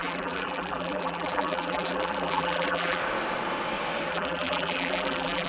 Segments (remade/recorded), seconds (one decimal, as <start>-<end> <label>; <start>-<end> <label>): 0.0-3.0 remade; 3.0-4.1 recorded; 4.1-5.5 remade